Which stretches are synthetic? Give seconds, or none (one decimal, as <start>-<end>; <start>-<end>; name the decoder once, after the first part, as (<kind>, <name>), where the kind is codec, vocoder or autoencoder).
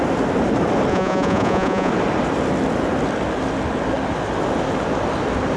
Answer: 0.9-1.9 (vocoder, Vocos)